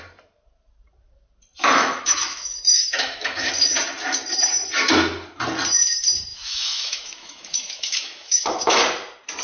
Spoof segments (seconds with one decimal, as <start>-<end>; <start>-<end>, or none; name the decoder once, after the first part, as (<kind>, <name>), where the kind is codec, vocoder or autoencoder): 1.8-3.5 (autoencoder, DAC-VAE); 6.3-8.8